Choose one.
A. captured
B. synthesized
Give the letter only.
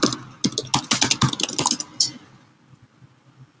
A